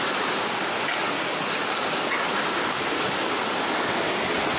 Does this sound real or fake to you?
real